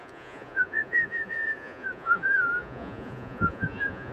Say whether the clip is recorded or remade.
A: remade